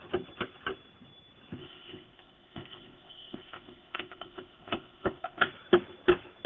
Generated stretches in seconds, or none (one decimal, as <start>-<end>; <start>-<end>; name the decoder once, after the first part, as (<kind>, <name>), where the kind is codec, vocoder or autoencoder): 1.6-5.5 (codec, ZipCodec)